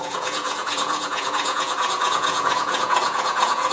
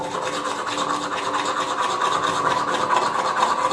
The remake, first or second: first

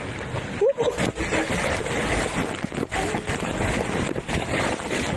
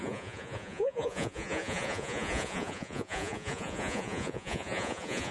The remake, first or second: second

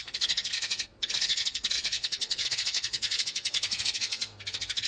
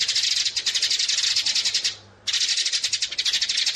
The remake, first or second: first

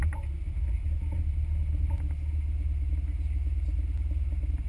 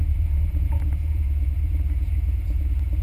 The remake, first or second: second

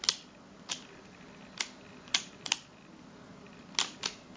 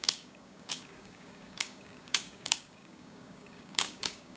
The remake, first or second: second